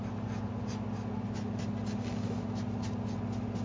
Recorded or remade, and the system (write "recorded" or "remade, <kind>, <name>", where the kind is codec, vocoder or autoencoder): recorded